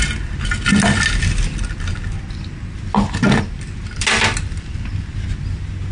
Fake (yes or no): no